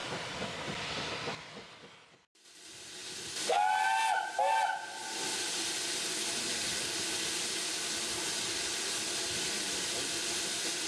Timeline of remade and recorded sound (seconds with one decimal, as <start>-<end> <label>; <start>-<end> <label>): 0.0-10.9 recorded